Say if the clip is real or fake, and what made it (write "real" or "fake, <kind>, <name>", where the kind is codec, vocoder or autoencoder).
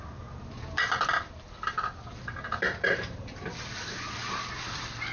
fake, vocoder, BigVGAN v2